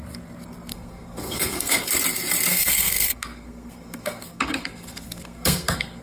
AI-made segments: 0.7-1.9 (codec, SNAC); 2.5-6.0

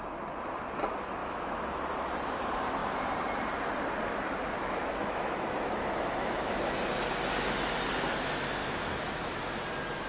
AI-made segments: 1.2-1.8 (autoencoder, DAC-VAE); 4.6-6.5; 8.6-9.4

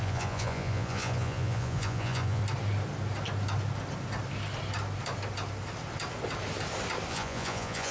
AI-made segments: 0.0-2.4 (vocoder, Vocos); 7.1-7.9